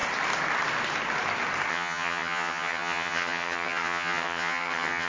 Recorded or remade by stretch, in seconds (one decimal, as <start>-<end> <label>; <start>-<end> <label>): 0.0-1.7 recorded; 1.7-5.1 remade